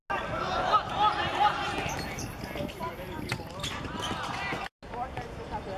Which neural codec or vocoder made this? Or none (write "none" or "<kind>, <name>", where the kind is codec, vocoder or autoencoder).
none